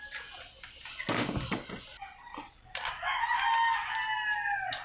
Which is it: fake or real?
real